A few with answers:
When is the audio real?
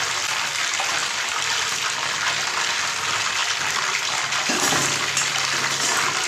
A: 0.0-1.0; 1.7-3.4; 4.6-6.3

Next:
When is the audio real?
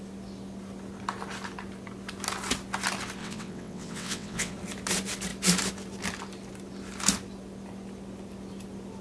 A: 0.0-3.2; 4.5-9.0